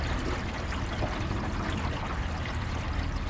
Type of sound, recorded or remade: recorded